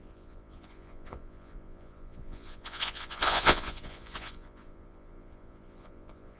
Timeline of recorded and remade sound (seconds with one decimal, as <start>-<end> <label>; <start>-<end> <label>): 0.0-6.4 remade